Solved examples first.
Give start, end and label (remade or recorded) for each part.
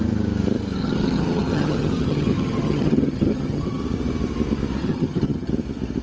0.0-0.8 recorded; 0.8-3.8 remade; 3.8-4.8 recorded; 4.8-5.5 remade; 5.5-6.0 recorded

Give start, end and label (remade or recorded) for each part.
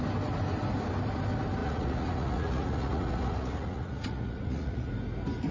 0.0-1.6 recorded; 1.6-4.9 remade; 4.9-5.5 recorded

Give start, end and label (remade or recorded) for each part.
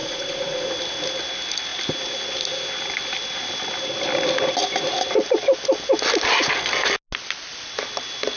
0.0-0.7 remade; 0.7-8.4 recorded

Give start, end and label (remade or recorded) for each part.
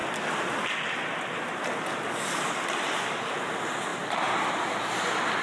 0.0-5.4 recorded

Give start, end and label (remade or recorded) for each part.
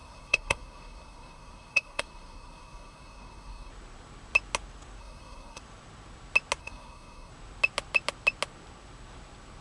0.0-3.7 remade; 3.7-5.0 recorded; 5.0-5.6 remade; 5.6-6.6 recorded; 6.6-7.3 remade; 7.3-9.6 recorded